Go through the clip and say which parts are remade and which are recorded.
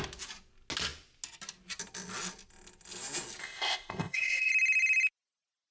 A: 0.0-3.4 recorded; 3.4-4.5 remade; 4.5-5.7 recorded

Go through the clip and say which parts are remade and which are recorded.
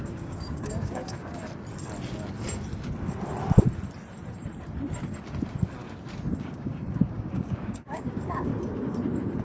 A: 0.0-1.4 remade; 1.4-6.4 recorded; 6.4-8.5 remade; 8.5-9.4 recorded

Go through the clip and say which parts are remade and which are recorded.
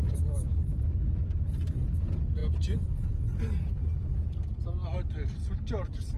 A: 0.0-6.2 recorded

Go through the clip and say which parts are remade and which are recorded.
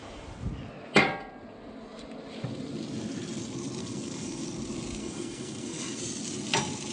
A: 0.0-3.8 recorded; 3.8-4.4 remade; 4.4-5.0 recorded; 5.0-6.0 remade; 6.0-6.9 recorded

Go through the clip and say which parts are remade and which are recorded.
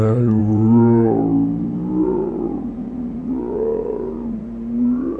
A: 0.0-3.2 remade; 3.2-4.4 recorded; 4.4-5.2 remade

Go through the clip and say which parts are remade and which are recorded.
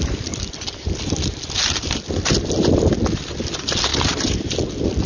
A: 0.0-5.1 recorded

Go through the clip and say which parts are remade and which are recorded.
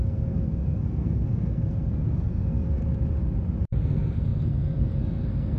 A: 0.0-2.8 remade; 2.8-3.8 recorded; 3.8-5.6 remade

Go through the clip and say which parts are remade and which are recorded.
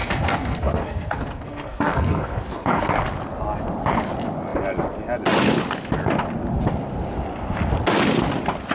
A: 0.0-2.9 remade; 2.9-8.7 recorded